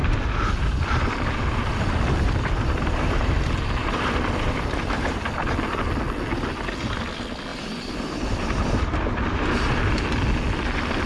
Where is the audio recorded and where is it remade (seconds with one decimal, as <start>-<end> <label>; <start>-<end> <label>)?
0.0-5.3 remade; 5.3-7.5 recorded; 7.5-9.9 remade; 9.9-11.1 recorded